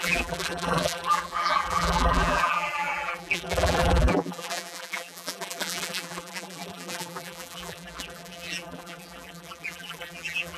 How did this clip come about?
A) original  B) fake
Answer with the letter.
B